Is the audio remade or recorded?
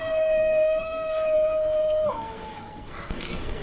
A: remade